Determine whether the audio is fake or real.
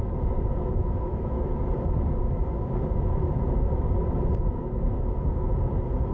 fake